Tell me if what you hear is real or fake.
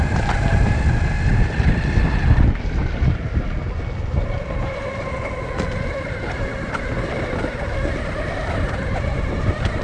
real